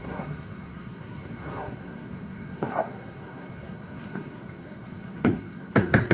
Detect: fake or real fake